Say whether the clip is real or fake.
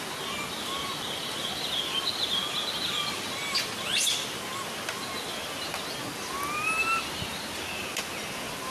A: real